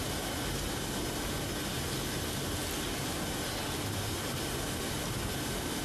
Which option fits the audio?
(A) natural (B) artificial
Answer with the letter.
A